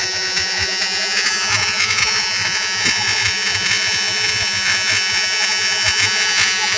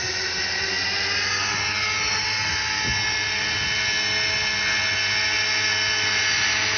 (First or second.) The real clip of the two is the second